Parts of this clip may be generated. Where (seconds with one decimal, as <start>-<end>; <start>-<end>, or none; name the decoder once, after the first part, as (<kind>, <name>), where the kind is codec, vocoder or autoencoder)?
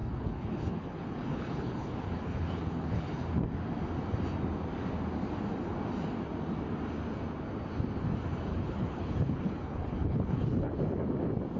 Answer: 0.0-3.3 (codec, HILCodec); 8.5-10.7